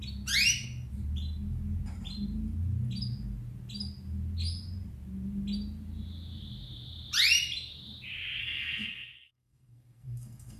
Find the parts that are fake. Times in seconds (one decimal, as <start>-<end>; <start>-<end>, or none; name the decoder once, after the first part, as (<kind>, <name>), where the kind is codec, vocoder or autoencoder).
8.4-10.6 (codec, SNAC)